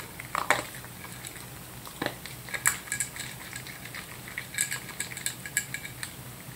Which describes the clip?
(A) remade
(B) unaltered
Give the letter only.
B